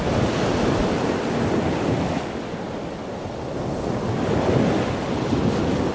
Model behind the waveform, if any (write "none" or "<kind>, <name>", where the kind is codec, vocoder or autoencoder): none